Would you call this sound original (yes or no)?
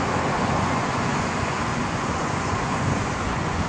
no